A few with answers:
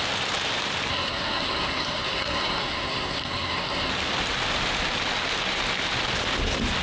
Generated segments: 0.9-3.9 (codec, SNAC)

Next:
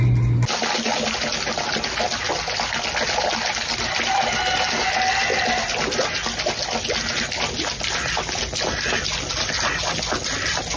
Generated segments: none

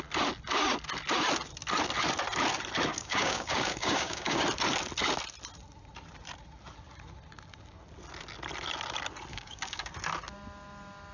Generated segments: 2.9-4.4 (codec, DAC); 9.3-9.9

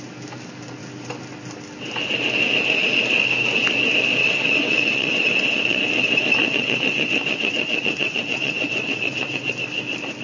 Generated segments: 4.2-5.8 (vocoder, WaveNeXt); 6.4-9.5

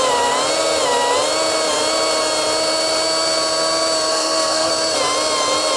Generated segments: 4.1-4.7 (codec, SNAC)

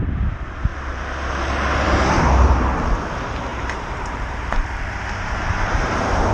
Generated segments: 3.5-6.3 (vocoder, BigVGAN v2)